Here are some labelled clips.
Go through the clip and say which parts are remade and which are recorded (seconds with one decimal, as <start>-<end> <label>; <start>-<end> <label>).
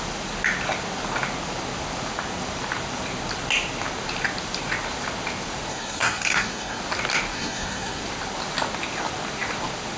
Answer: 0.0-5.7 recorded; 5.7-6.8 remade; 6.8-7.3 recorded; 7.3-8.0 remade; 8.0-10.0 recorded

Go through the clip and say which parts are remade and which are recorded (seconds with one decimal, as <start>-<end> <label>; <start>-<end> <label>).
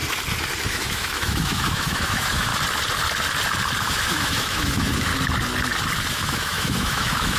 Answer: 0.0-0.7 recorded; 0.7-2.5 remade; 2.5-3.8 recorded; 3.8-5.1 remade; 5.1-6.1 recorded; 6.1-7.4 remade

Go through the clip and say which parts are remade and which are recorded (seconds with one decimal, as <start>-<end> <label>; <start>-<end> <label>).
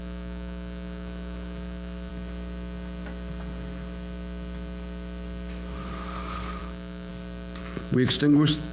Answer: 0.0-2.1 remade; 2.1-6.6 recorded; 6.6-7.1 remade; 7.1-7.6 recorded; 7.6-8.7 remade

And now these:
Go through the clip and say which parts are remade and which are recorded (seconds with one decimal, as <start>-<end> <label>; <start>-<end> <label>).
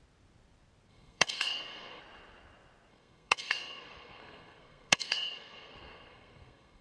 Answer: 0.0-0.9 recorded; 0.9-2.0 remade; 2.0-2.9 recorded; 2.9-6.8 remade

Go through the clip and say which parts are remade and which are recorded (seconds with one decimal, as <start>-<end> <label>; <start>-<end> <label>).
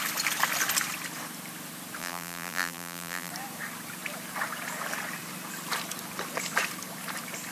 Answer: 0.0-2.0 recorded; 2.0-3.3 remade; 3.3-7.5 recorded